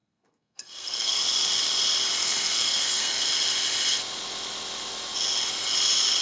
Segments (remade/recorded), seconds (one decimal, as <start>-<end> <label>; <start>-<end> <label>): 0.0-1.2 remade; 1.2-2.2 recorded; 2.2-3.3 remade; 3.3-6.2 recorded

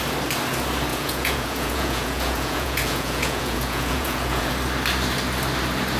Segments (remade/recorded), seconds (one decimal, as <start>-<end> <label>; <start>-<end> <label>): 0.0-0.9 recorded; 0.9-4.5 remade; 4.5-6.0 recorded

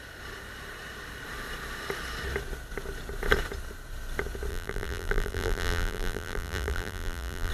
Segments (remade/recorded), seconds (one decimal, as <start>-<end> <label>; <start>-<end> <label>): 0.0-4.5 recorded; 4.5-7.5 remade

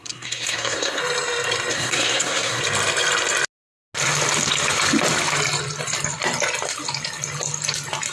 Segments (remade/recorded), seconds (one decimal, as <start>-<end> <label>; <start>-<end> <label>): 0.0-1.0 remade; 1.0-1.7 recorded; 1.7-2.6 remade; 2.6-8.1 recorded

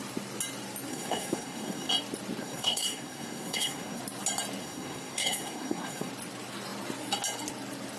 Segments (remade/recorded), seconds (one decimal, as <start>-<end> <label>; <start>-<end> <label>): 0.0-0.9 recorded; 0.9-1.9 remade; 1.9-2.4 recorded; 2.4-4.0 remade; 4.0-4.6 recorded; 4.6-6.1 remade; 6.1-8.0 recorded